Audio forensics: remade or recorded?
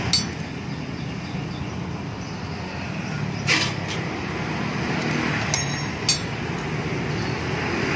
recorded